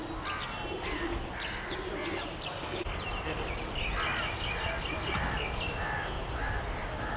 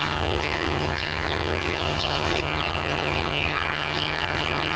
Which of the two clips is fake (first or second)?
second